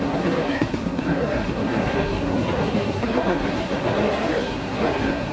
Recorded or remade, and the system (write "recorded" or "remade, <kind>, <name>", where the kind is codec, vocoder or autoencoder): remade, codec, SNAC